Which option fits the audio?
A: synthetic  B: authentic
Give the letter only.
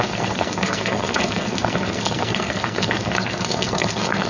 A